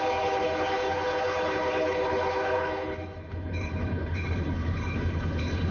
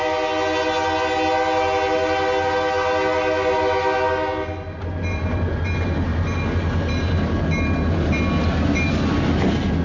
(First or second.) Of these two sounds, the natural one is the second